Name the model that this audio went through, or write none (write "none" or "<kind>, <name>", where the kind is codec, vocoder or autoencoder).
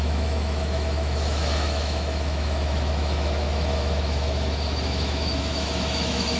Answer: autoencoder, DAC-VAE